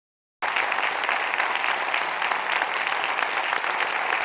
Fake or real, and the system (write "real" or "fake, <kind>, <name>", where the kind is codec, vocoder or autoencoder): real